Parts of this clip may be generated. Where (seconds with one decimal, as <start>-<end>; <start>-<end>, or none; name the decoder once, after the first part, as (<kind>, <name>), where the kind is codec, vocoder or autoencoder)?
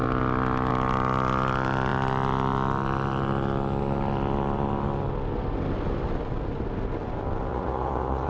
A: 7.5-8.3 (vocoder, Vocos)